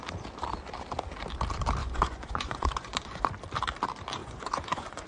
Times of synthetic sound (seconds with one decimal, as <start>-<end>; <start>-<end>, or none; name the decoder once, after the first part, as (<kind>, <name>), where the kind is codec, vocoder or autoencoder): 1.8-3.3 (vocoder, Vocos); 4.2-5.1